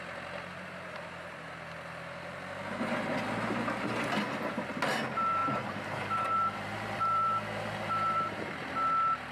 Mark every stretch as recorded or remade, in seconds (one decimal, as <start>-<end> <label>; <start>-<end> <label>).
0.0-5.4 recorded; 5.4-8.5 remade; 8.5-9.3 recorded